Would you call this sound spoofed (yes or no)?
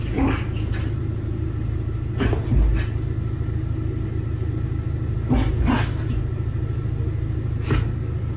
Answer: no